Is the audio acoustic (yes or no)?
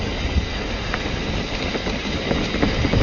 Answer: yes